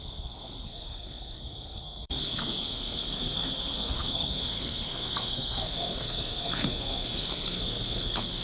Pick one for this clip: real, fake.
fake